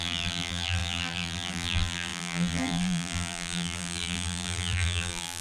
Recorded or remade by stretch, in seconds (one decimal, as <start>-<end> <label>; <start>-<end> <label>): 0.0-5.4 remade

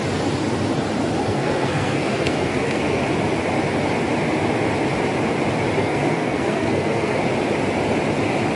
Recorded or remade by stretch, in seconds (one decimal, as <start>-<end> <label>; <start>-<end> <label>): 0.0-1.2 recorded; 1.2-3.0 remade; 3.0-5.8 recorded; 5.8-7.2 remade; 7.2-8.6 recorded

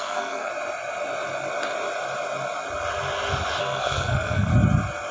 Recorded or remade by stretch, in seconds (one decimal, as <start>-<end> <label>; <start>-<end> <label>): 0.0-0.5 remade; 0.5-3.6 recorded; 3.6-4.5 remade; 4.5-5.1 recorded

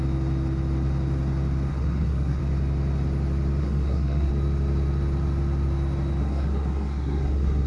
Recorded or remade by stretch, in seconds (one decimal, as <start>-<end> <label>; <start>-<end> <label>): 0.0-1.7 recorded; 1.7-2.4 remade; 2.4-3.6 recorded; 3.6-4.3 remade; 4.3-6.2 recorded; 6.2-7.7 remade

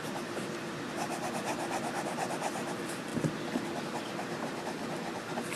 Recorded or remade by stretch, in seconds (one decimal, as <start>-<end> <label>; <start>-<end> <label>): 0.0-1.5 remade; 1.5-2.0 recorded; 2.0-3.1 remade; 3.1-3.8 recorded; 3.8-5.6 remade

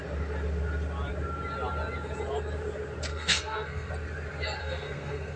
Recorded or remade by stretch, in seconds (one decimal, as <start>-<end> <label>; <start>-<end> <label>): 0.0-3.1 recorded; 3.1-3.9 remade; 3.9-4.6 recorded; 4.6-5.4 remade

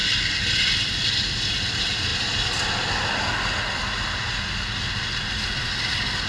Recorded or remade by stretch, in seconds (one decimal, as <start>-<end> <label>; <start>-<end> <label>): 0.0-6.3 recorded